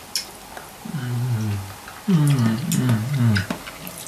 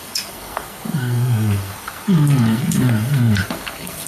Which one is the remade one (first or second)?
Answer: second